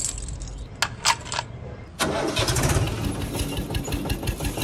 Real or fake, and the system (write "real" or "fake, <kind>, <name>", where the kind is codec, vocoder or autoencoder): real